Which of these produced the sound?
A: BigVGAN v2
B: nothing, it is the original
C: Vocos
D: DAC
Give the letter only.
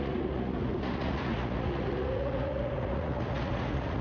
C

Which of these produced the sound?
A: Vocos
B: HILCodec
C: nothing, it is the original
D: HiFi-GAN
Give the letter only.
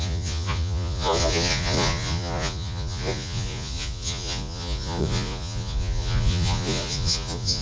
A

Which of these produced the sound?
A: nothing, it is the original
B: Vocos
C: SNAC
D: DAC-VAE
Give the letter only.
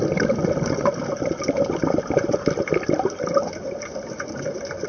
A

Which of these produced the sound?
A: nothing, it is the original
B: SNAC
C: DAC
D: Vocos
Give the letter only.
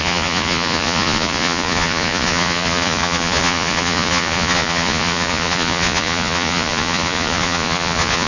D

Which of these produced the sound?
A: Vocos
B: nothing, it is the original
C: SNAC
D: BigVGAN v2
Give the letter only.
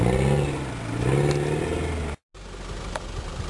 B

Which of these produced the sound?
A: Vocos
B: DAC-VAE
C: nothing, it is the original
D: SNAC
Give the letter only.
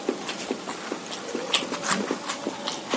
C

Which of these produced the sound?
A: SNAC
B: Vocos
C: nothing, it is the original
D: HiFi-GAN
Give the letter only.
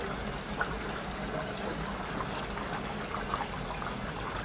C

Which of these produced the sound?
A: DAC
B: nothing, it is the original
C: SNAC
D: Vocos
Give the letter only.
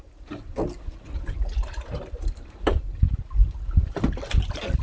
B